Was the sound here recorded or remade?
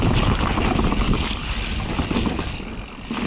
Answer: recorded